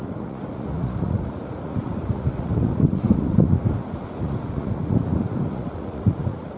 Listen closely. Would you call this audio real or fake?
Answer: fake